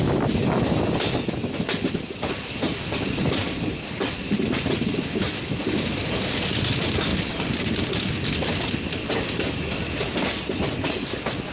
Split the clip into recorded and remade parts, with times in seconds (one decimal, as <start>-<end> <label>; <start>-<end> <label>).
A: 0.0-11.5 recorded

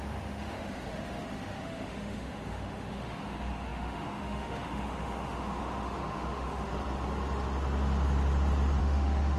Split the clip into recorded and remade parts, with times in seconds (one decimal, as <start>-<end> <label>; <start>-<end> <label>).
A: 0.0-6.7 remade; 6.7-8.8 recorded; 8.8-9.4 remade

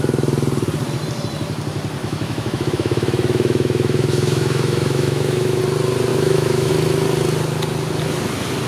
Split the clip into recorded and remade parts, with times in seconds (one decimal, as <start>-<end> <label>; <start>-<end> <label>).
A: 0.0-2.0 recorded; 2.0-5.6 remade; 5.6-6.1 recorded; 6.1-6.7 remade; 6.7-8.7 recorded

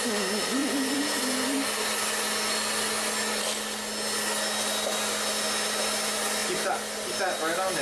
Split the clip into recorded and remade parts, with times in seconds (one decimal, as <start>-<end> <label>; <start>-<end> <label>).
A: 0.0-7.8 recorded